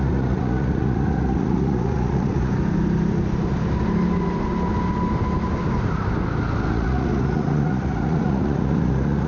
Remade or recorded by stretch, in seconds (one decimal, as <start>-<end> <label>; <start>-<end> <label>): 0.0-2.5 remade; 2.5-6.7 recorded; 6.7-9.3 remade